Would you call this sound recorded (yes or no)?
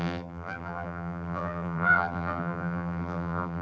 no